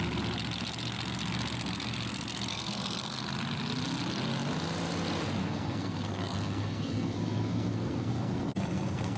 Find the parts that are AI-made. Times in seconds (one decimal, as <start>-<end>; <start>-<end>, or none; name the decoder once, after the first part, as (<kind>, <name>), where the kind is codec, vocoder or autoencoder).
2.5-3.2 (codec, SNAC); 5.4-9.2